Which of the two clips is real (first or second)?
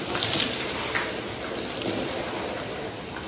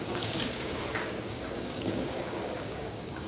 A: first